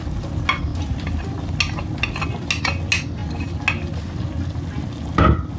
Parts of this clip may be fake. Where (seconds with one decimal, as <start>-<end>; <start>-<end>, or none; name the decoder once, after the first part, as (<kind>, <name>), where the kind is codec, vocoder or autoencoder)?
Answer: none